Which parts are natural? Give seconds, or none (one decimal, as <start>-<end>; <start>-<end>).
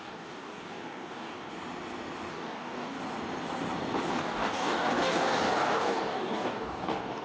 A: 1.5-2.3; 3.0-4.1